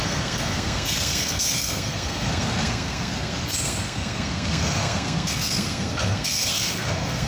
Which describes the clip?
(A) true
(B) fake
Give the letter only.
B